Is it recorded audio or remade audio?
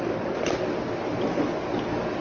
recorded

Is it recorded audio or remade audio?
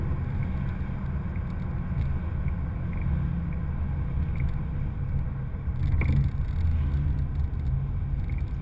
recorded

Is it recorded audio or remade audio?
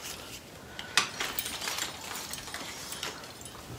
recorded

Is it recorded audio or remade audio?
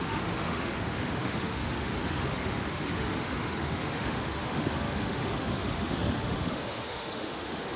remade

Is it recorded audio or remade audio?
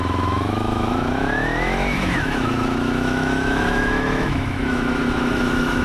remade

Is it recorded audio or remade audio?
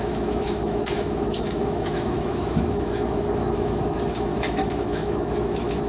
remade